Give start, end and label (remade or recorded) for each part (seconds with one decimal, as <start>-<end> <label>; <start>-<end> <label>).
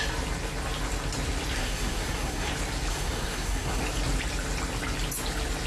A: 0.0-1.6 recorded; 1.6-2.5 remade; 2.5-2.9 recorded; 2.9-3.8 remade; 3.8-5.7 recorded